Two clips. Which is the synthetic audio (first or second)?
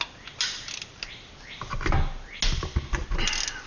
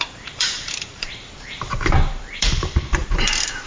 second